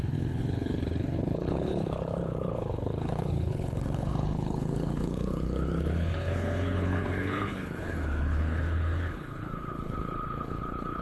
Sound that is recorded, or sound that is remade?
remade